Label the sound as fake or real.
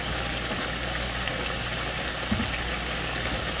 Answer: real